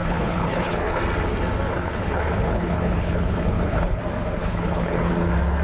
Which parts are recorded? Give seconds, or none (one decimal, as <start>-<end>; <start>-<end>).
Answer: 1.0-1.7; 4.0-4.4; 5.1-5.6